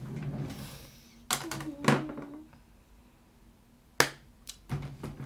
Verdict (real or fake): real